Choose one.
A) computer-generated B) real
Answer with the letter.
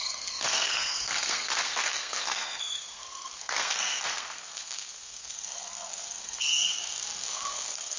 A